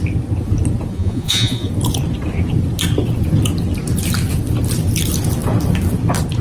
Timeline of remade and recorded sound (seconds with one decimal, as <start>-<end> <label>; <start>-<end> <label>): 0.0-0.9 recorded; 0.9-1.7 remade; 1.7-6.4 recorded